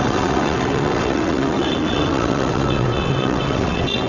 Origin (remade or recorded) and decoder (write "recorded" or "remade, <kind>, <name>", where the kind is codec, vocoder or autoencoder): remade, vocoder, WaveNeXt